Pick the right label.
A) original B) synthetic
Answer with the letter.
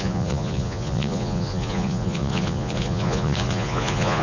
B